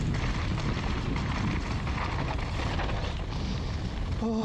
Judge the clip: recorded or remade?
recorded